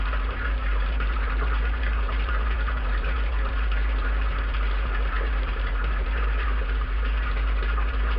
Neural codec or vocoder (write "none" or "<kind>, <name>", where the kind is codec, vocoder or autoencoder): vocoder, BigVGAN v2